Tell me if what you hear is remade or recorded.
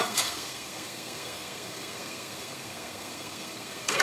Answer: remade